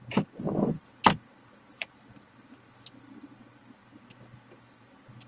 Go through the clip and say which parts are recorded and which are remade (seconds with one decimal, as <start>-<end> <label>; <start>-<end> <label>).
0.0-1.7 recorded; 1.7-2.3 remade; 2.3-5.3 recorded